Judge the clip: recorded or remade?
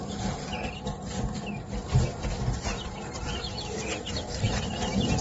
remade